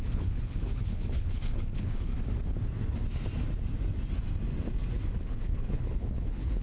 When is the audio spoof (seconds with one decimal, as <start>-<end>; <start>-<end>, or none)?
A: 0.0-2.1; 5.2-6.6